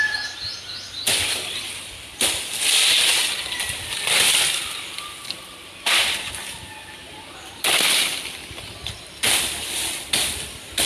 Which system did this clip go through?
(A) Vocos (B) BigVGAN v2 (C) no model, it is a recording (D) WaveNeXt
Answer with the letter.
B